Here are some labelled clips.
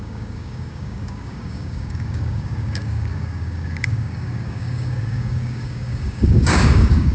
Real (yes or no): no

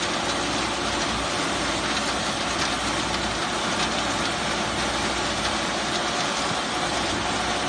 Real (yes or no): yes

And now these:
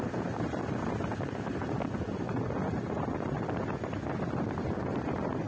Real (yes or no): yes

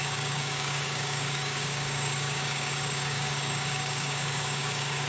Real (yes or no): no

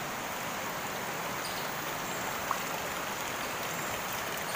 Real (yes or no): yes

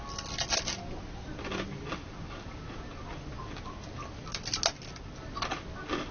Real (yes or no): yes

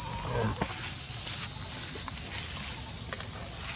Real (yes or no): yes